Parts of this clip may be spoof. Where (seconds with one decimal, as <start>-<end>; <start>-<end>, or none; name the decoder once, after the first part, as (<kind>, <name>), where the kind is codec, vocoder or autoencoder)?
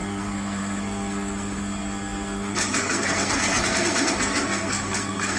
0.0-5.4 (codec, SNAC)